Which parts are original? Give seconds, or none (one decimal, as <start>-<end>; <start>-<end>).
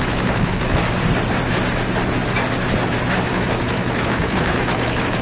0.8-3.3